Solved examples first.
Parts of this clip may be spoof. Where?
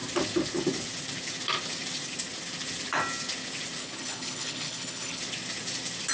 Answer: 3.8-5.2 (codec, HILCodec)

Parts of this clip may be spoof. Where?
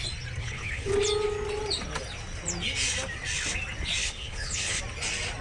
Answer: 0.4-0.9 (codec, HILCodec); 4.0-4.8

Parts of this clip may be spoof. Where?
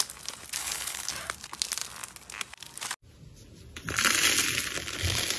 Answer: 0.6-1.1 (codec, HILCodec)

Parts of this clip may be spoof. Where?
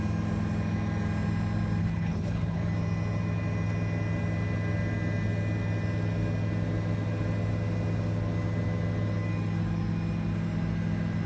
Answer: 1.8-2.6 (codec, HILCodec)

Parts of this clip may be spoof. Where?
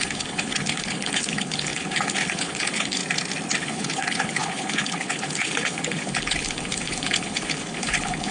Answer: 0.0-3.0 (codec, HILCodec); 3.6-8.3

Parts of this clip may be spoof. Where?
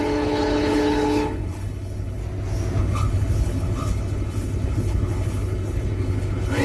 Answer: 0.0-2.2 (codec, HILCodec); 2.8-6.6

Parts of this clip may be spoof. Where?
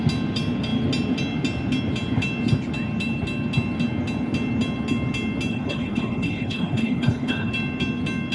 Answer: 5.5-7.5 (codec, HILCodec)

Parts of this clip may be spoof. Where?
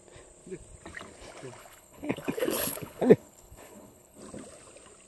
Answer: 1.6-4.2 (codec, HILCodec)